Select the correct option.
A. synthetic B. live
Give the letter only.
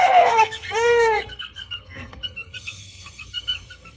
A